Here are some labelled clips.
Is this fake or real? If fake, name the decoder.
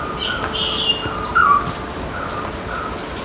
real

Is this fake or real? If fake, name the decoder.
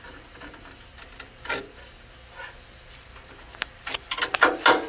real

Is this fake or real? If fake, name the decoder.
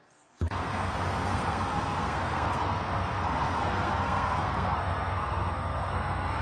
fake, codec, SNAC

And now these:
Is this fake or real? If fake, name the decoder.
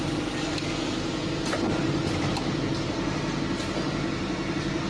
real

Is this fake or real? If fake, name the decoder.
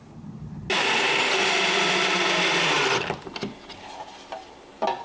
real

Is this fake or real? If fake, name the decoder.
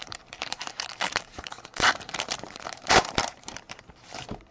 fake, vocoder, BigVGAN v2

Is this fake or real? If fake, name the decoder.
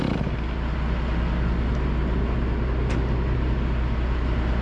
real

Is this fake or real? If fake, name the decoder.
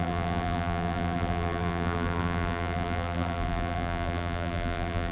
fake, vocoder, BigVGAN v2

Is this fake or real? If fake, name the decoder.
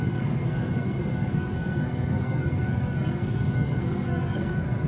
fake, codec, SNAC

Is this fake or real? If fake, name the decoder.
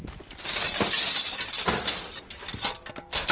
real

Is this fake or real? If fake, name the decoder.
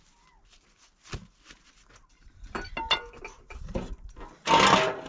real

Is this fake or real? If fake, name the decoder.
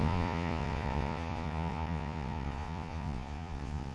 fake, vocoder, Vocos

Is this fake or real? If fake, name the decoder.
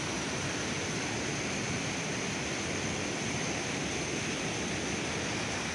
real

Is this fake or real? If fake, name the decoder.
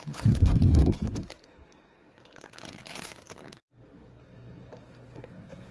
fake, codec, SNAC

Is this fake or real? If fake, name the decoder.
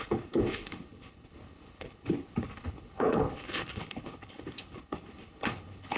fake, codec, HILCodec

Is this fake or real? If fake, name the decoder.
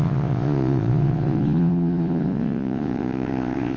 fake, vocoder, Vocos